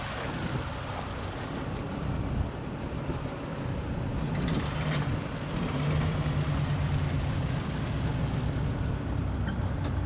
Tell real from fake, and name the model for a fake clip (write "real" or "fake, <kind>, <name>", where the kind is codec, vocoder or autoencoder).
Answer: real